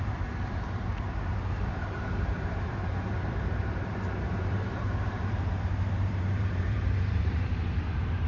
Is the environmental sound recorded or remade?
remade